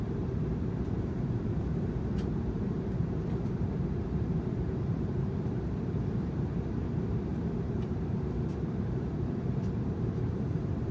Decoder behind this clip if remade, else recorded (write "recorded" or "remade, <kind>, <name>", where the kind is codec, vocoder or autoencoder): remade, vocoder, BigVGAN v2